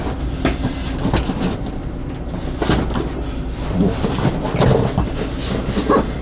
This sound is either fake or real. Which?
real